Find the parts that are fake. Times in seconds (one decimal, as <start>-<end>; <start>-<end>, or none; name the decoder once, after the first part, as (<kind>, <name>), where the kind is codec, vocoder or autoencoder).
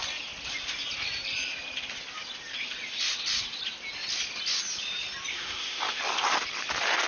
5.3-6.0 (autoencoder, DAC-VAE)